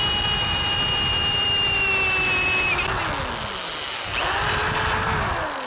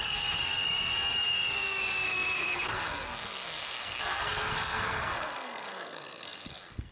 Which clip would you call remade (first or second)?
second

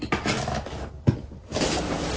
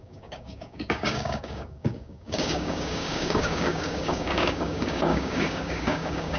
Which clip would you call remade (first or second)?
second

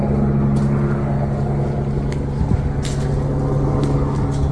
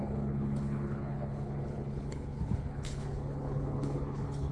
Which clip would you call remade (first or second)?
second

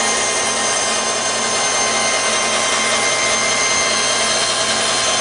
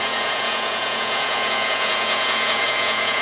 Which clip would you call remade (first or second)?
second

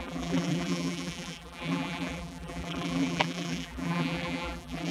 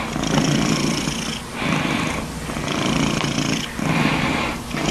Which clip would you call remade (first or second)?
first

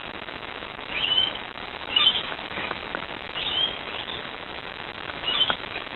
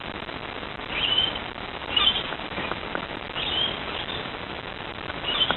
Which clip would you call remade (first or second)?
first